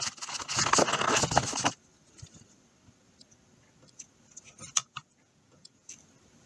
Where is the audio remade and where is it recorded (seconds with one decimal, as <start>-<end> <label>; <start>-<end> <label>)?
0.0-4.8 recorded; 4.8-5.9 remade; 5.9-6.5 recorded